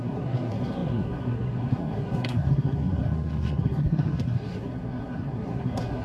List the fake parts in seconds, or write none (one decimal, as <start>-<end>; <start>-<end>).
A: 0.0-6.0